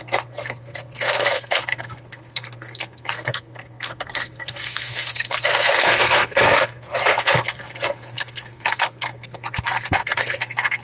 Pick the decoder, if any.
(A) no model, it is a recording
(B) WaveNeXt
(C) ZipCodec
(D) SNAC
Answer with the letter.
D